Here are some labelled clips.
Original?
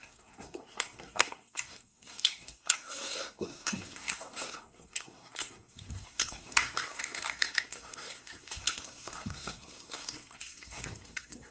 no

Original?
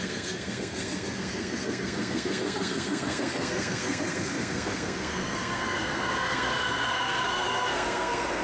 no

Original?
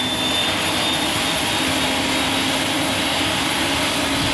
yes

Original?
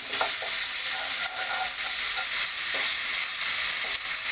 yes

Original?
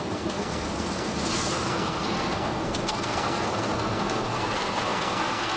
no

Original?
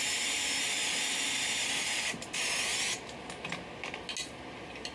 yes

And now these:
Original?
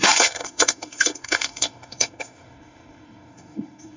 no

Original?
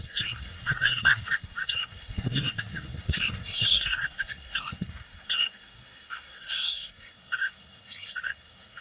no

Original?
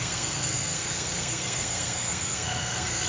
no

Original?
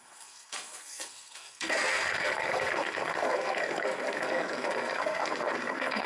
no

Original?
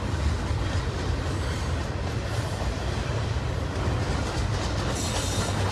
yes